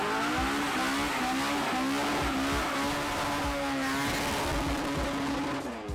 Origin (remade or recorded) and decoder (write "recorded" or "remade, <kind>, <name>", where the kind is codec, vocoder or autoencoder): recorded